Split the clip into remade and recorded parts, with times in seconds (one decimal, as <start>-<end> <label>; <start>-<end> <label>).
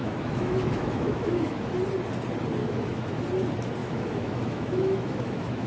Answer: 0.0-1.7 remade; 1.7-2.6 recorded; 2.6-3.2 remade; 3.2-3.8 recorded; 3.8-5.7 remade